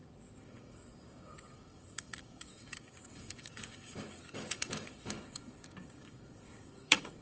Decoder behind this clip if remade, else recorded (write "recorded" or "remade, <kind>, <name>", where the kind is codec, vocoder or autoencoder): remade, codec, DAC